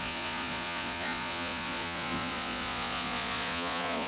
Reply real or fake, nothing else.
fake